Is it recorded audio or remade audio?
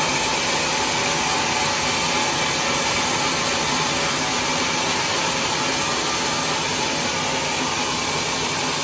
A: recorded